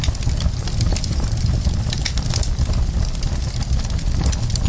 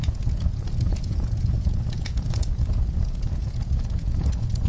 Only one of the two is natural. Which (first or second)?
first